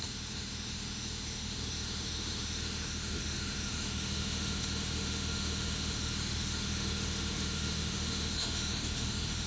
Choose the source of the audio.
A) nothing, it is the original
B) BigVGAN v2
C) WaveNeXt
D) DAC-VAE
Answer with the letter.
D